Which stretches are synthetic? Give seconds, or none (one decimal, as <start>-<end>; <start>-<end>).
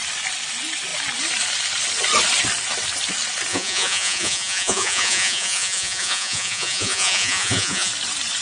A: 3.5-7.9